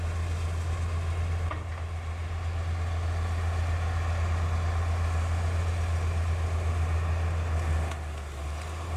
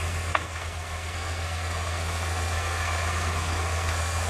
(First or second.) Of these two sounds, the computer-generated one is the second